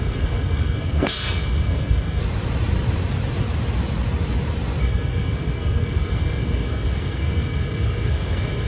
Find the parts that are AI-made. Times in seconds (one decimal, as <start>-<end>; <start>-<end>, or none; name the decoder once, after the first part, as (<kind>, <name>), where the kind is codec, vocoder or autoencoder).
0.0-2.2 (codec, SNAC); 4.8-8.7